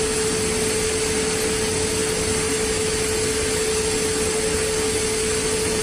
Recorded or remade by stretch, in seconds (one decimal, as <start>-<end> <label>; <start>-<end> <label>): 0.0-5.8 recorded